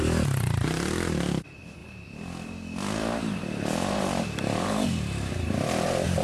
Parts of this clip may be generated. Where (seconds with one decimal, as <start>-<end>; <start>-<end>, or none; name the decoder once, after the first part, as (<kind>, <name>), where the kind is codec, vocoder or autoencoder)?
0.0-1.8 (vocoder, BigVGAN v2); 3.0-6.2